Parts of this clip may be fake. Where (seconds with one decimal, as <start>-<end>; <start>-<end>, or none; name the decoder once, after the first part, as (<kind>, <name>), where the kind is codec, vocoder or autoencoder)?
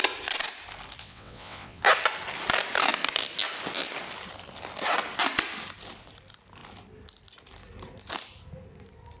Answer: 1.0-1.8 (vocoder, WaveNeXt)